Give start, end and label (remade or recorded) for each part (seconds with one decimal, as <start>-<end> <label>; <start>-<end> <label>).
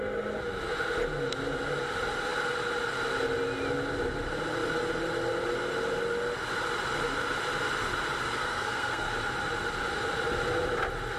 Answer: 0.0-8.4 recorded; 8.4-9.1 remade; 9.1-11.2 recorded